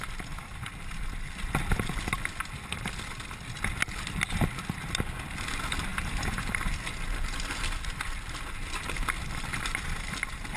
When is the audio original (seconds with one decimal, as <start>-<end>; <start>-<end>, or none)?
0.0-10.6